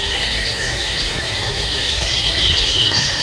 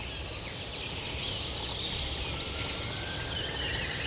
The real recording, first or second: second